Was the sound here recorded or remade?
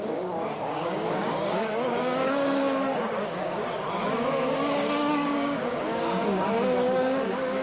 remade